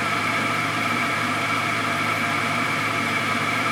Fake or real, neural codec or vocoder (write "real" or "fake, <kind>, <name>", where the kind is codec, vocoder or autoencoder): fake, vocoder, BigVGAN v2